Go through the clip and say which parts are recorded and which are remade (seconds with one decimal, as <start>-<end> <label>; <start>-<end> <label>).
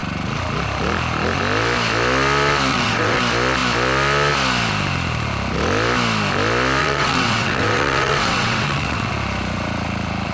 0.0-2.7 recorded; 2.7-3.2 remade; 3.2-6.8 recorded; 6.8-9.1 remade; 9.1-10.3 recorded